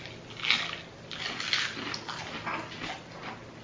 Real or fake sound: real